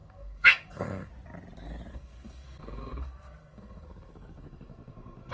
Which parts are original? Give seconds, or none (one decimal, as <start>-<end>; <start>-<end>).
1.1-1.9